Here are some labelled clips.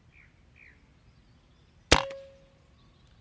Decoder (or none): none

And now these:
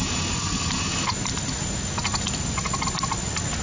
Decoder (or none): none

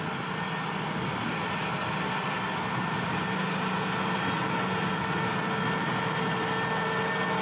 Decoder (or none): none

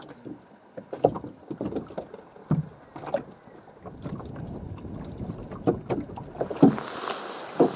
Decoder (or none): none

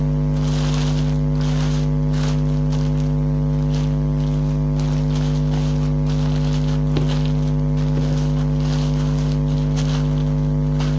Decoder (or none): none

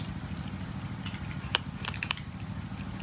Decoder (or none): none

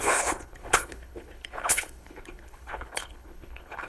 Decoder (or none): codec, HILCodec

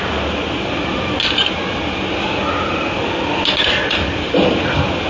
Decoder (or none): none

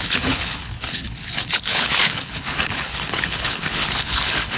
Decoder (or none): codec, HILCodec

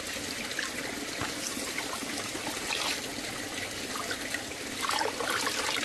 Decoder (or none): none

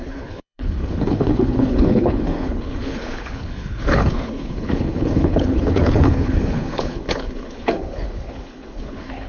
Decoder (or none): codec, HILCodec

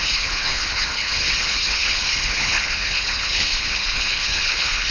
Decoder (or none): codec, HILCodec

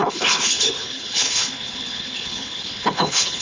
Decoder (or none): codec, HILCodec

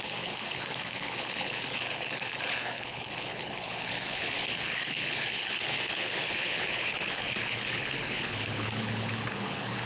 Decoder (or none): codec, HILCodec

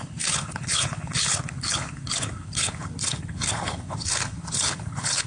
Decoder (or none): codec, HILCodec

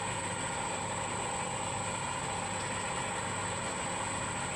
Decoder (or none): none